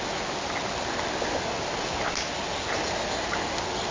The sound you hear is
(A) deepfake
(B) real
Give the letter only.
B